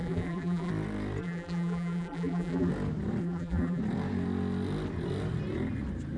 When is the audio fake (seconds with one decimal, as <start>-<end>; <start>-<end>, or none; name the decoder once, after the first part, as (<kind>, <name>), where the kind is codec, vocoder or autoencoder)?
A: 0.0-0.7 (vocoder, BigVGAN v2); 1.2-2.7; 3.2-3.8